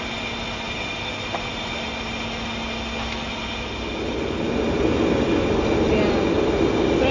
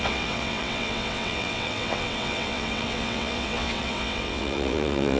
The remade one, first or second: second